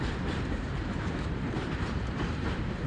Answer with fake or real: fake